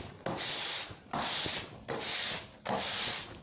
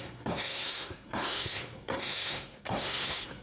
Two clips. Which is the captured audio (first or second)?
first